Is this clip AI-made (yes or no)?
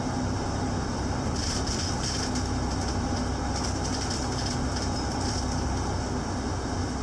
no